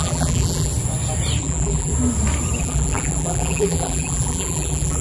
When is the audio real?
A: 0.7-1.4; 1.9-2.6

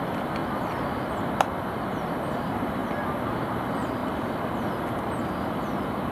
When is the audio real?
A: 0.4-2.4; 2.8-3.3; 4.0-5.2